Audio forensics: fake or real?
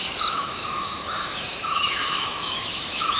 fake